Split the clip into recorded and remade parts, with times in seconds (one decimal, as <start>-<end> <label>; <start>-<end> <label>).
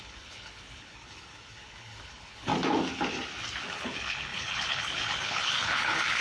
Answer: 0.0-2.5 remade; 2.5-3.6 recorded; 3.6-6.2 remade